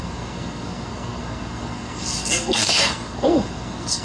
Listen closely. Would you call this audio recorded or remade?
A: remade